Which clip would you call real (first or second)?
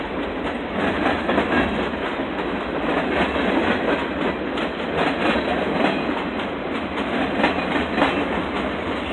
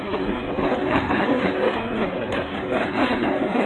first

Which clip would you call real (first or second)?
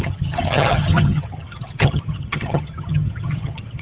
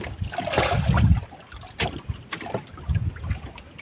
second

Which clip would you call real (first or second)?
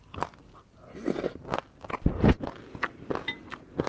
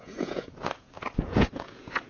first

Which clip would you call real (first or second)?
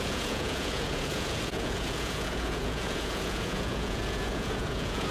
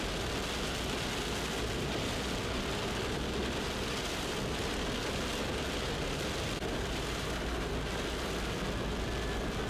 second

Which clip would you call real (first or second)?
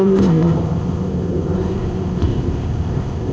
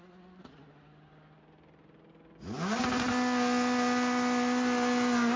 second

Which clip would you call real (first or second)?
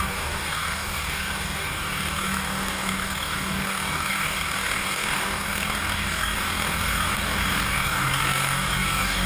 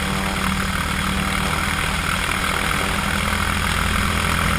second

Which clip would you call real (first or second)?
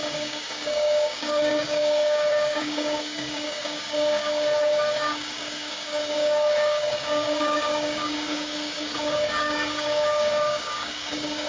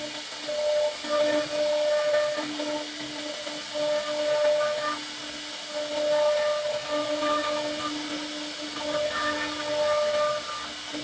second